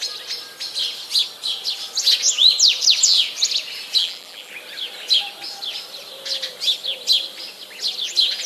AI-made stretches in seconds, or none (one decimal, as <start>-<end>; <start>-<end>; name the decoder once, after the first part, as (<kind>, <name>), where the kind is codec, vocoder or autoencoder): 4.0-4.5 (vocoder, BigVGAN v2)